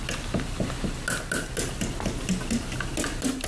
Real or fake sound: real